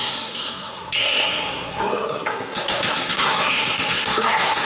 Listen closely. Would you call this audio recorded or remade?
remade